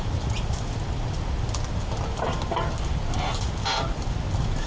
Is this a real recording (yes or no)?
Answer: yes